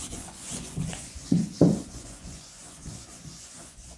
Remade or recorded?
remade